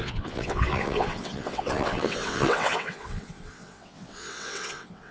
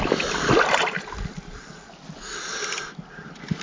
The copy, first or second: first